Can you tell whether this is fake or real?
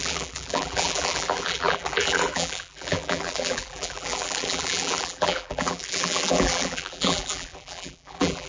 fake